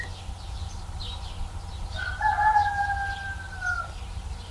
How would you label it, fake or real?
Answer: real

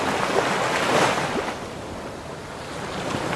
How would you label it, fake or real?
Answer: real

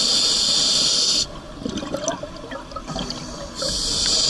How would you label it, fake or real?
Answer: real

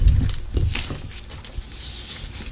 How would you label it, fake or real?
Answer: real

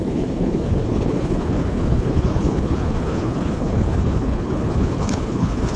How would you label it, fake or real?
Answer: fake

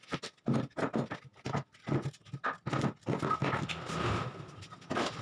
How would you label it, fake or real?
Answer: real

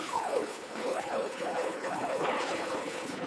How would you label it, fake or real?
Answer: fake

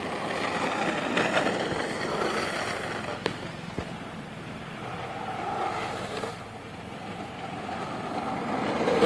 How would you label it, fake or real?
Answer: real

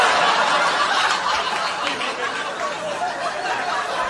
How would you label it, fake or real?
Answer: real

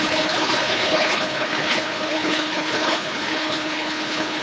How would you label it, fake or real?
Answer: fake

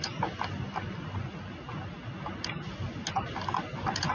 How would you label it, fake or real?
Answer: real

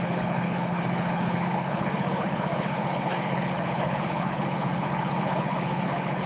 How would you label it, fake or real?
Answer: fake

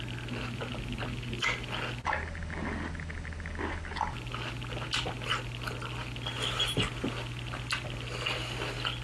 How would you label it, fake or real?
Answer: real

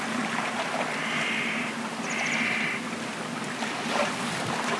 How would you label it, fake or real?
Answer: real